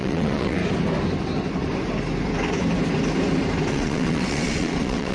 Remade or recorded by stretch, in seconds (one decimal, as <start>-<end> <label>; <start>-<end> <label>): 0.0-0.6 remade; 0.6-3.7 recorded; 3.7-5.1 remade

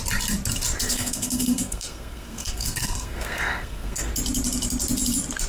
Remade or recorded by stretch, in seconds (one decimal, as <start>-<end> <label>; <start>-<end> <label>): 0.0-0.8 recorded; 0.8-4.1 remade; 4.1-5.5 recorded